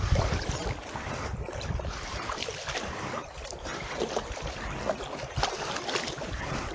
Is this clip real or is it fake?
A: fake